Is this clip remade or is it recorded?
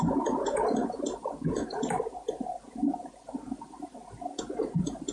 remade